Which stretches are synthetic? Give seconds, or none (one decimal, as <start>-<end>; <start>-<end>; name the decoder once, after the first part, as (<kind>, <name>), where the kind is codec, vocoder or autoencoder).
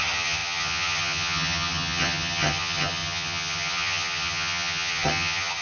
0.0-5.6 (vocoder, HiFi-GAN)